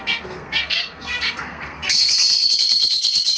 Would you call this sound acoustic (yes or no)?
no